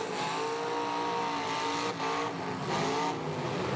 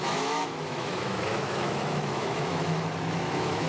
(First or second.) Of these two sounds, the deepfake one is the second